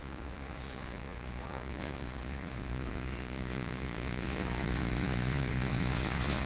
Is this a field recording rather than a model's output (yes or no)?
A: no